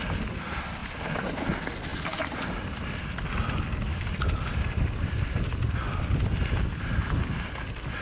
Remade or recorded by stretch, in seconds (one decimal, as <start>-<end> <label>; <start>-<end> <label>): 0.0-0.8 recorded; 0.8-1.4 remade; 1.4-1.9 recorded; 1.9-3.0 remade; 3.0-8.0 recorded